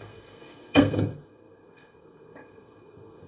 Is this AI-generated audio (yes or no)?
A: yes